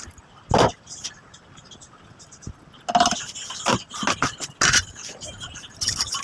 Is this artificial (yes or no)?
no